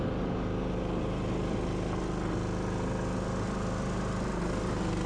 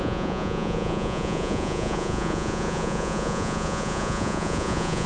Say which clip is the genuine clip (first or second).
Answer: first